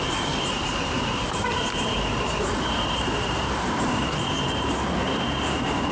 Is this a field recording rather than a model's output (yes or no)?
no